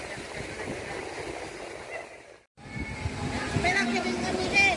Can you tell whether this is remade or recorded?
recorded